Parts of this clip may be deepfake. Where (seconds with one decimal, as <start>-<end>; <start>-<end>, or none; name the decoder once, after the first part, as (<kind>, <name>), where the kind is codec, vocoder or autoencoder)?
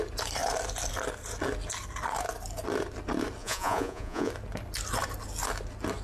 3.4-4.3 (vocoder, Vocos)